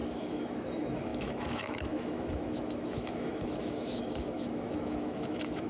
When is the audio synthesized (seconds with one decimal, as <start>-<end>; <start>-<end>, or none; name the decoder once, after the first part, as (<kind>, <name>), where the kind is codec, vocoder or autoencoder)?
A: 0.0-5.7 (autoencoder, DAC-VAE)